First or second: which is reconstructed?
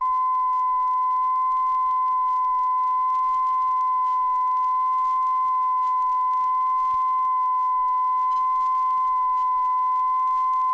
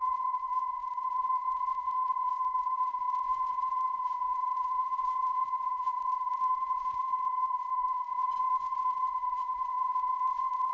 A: second